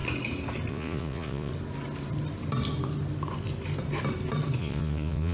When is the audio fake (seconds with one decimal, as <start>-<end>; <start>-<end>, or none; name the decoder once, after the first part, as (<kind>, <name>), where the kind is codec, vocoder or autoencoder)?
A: 0.7-1.5 (vocoder, Vocos); 4.6-5.3